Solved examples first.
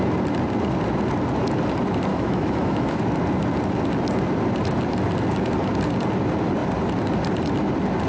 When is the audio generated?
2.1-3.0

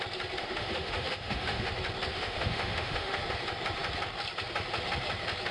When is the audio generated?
0.4-1.7; 2.1-3.2

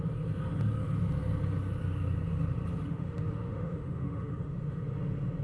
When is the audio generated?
2.7-4.8

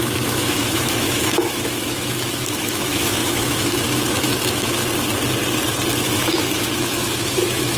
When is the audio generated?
0.0-4.8; 6.0-7.8

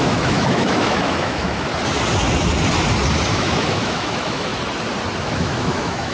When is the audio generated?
0.0-1.7; 3.3-4.5; 5.2-6.1

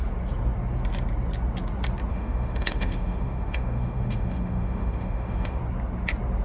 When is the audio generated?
2.1-5.6

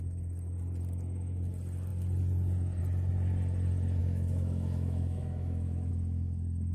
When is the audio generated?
4.0-5.9